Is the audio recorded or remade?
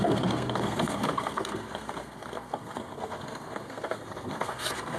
remade